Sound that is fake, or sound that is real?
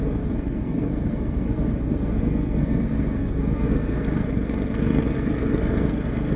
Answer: fake